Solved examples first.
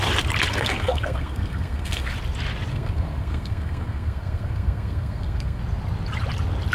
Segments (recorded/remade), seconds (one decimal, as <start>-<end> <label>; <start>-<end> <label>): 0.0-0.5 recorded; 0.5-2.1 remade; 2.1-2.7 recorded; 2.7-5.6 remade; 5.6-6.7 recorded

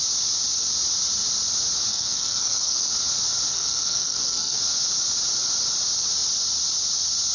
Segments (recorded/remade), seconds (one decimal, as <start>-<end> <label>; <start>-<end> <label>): 0.0-1.9 recorded; 1.9-2.9 remade; 2.9-3.5 recorded; 3.5-4.6 remade; 4.6-7.3 recorded

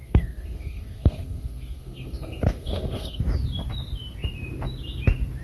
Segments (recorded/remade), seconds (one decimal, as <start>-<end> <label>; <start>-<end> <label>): 0.0-3.2 remade; 3.2-5.4 recorded

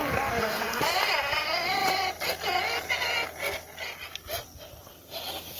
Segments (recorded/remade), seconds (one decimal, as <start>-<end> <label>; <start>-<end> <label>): 0.0-0.8 remade; 0.8-5.6 recorded